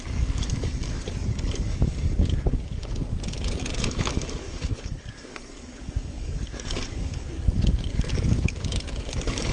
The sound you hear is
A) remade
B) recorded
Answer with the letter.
A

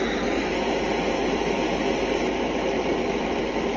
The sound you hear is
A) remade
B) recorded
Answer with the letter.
B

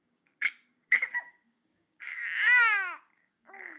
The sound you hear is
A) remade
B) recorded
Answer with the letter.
A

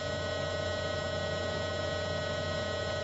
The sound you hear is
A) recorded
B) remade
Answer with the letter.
A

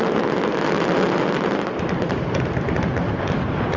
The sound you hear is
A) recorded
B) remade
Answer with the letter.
A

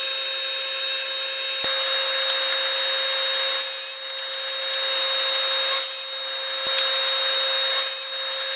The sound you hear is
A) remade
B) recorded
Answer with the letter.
B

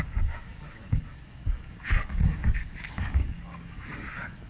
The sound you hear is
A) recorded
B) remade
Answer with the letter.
B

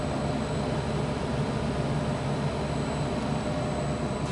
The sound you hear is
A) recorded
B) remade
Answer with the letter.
A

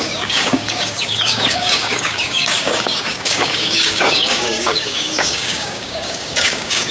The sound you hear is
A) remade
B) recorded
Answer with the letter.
A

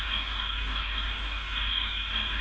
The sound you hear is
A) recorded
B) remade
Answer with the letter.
B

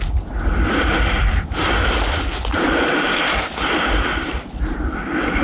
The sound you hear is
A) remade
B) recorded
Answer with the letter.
B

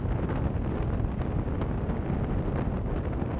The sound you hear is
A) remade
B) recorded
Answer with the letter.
B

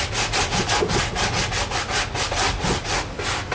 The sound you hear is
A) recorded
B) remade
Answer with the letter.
A